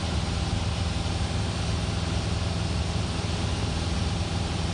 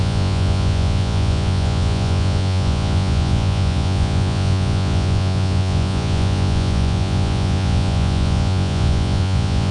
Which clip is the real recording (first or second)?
first